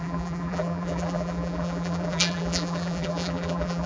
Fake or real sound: fake